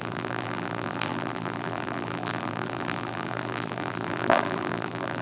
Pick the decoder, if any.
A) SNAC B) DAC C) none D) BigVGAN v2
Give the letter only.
D